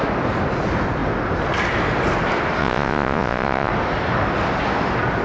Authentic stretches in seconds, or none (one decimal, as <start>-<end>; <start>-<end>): 0.0-2.6; 3.7-5.2